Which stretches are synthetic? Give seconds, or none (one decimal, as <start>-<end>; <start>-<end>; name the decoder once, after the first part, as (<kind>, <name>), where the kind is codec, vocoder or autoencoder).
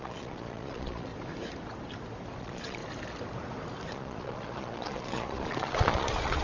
0.0-1.1 (vocoder, Vocos); 2.4-2.8; 3.9-6.4